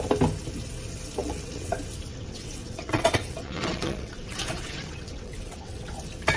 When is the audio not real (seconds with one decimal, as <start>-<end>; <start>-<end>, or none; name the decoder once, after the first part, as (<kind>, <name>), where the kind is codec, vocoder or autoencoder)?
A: 1.2-1.7 (vocoder, WaveNeXt); 2.1-5.9